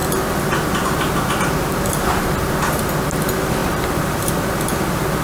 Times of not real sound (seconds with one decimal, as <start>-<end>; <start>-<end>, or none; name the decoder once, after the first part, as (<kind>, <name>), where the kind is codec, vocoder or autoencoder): 3.6-4.3 (vocoder, BigVGAN v2)